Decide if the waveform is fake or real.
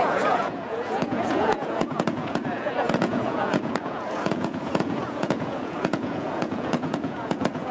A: fake